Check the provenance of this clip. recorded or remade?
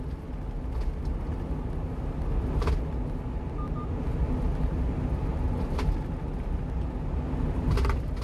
recorded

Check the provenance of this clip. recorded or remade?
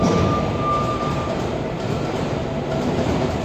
remade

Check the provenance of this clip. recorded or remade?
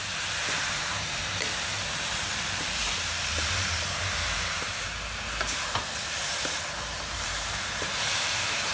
remade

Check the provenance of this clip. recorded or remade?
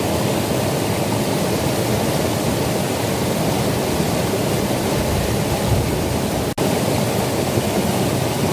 recorded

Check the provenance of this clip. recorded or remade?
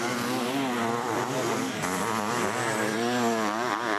recorded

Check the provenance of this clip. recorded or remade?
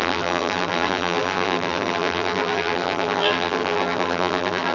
remade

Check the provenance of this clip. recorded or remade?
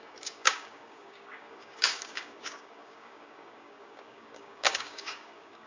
remade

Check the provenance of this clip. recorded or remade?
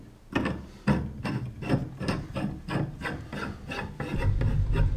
recorded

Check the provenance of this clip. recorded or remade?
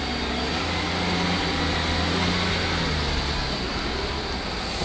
recorded